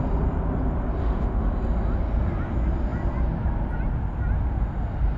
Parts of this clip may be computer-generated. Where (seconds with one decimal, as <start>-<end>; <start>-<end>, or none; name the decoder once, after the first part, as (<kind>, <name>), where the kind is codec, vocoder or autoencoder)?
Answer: 1.0-1.5 (autoencoder, DAC-VAE)